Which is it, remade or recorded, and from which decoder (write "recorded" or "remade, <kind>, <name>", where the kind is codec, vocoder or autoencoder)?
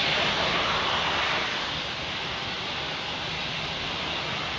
recorded